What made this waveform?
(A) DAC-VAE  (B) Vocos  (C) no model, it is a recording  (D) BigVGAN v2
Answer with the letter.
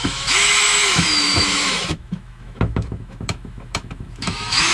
A